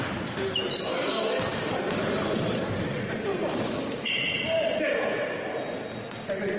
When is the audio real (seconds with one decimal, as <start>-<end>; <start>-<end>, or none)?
0.0-1.5; 2.5-3.3; 4.8-6.6